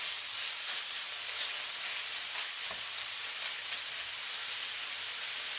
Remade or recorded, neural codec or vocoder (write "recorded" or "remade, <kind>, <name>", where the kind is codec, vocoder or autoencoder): recorded